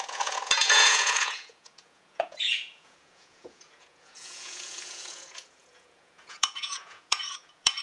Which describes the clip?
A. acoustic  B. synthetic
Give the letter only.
B